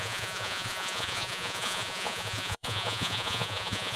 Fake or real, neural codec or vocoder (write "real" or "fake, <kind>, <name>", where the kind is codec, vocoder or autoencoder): fake, vocoder, Vocos